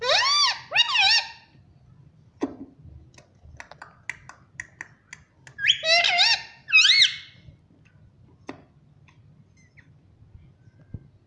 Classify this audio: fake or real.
real